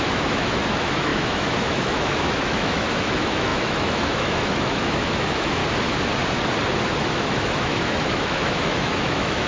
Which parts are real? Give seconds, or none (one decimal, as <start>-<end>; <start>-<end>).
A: 5.6-7.0